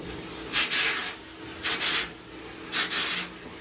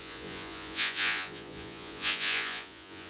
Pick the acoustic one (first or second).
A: first